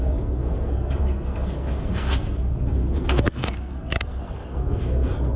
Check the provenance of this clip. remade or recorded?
remade